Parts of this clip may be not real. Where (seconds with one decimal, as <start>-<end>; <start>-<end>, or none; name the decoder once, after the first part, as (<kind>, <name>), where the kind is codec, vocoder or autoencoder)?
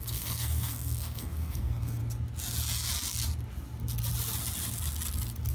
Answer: 0.0-2.0 (codec, SNAC)